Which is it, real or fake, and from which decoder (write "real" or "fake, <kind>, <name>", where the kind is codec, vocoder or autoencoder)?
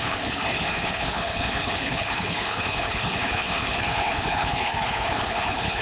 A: fake, codec, HILCodec